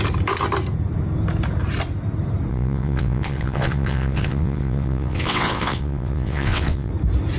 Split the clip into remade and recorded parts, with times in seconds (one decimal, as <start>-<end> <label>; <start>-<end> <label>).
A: 0.0-2.5 recorded; 2.5-6.9 remade; 6.9-7.4 recorded